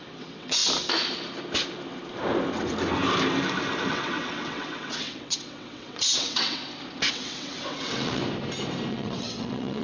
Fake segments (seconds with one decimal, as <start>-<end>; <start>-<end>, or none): 0.0-0.6; 3.9-6.6; 7.1-8.2; 8.9-9.8